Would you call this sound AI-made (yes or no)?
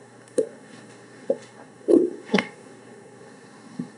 yes